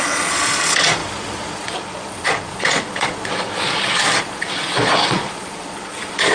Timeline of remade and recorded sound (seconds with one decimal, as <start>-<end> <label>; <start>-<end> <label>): 0.0-6.3 remade